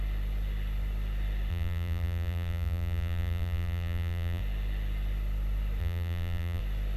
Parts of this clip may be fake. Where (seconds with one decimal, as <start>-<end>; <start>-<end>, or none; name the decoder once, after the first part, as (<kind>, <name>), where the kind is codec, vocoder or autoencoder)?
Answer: 1.5-4.4 (vocoder, BigVGAN v2); 5.8-6.6